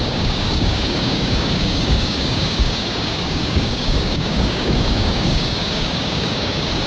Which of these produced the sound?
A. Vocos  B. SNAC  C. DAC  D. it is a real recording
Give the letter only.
C